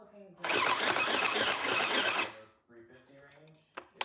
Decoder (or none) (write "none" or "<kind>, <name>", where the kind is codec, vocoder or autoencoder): none